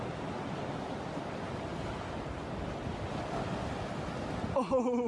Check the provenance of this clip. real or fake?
real